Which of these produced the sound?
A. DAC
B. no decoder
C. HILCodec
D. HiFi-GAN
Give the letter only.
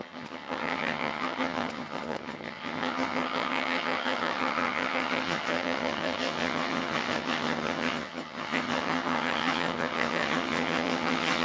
D